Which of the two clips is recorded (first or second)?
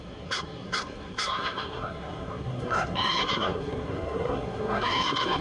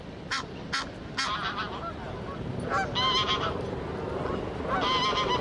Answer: second